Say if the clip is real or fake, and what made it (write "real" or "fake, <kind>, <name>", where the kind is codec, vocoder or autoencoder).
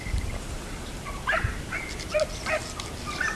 real